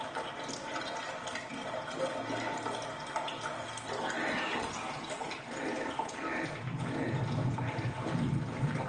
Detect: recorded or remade recorded